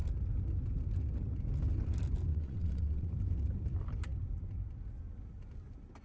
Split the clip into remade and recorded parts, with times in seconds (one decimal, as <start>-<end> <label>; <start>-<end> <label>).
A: 0.0-2.3 recorded; 2.3-3.1 remade; 3.1-6.0 recorded

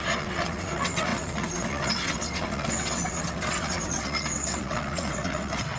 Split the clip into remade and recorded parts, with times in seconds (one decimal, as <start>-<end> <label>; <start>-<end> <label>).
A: 0.0-5.8 remade

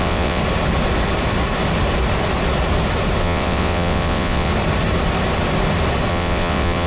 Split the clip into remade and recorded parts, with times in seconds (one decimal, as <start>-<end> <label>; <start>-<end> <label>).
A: 0.0-0.4 remade; 0.4-3.2 recorded; 3.2-4.5 remade; 4.5-6.1 recorded; 6.1-6.9 remade

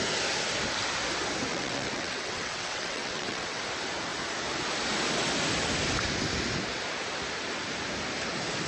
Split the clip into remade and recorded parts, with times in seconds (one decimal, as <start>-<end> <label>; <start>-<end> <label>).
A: 0.0-1.5 recorded; 1.5-3.6 remade; 3.6-8.7 recorded

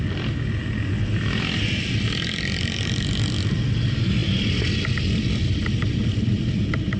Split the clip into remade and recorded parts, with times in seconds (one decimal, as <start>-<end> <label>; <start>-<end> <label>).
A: 0.0-7.0 recorded

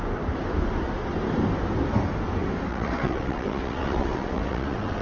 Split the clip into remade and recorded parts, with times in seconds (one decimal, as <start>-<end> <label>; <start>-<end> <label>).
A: 0.0-2.7 recorded; 2.7-5.0 remade

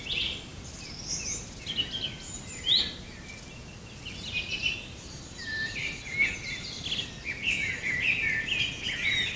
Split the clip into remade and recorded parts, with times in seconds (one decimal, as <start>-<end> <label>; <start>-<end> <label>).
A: 0.0-9.4 recorded